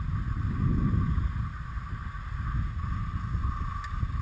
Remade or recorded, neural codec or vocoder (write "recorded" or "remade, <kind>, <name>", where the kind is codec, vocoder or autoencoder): recorded